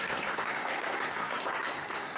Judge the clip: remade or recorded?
remade